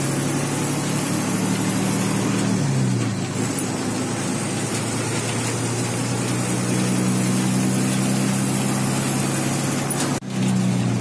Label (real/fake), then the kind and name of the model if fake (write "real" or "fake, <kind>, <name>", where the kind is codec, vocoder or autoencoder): real